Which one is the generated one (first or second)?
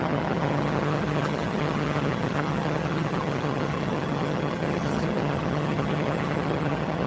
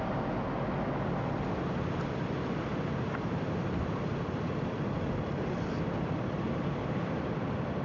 first